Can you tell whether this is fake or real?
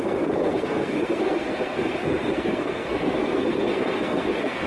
fake